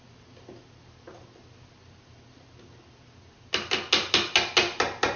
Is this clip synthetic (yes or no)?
no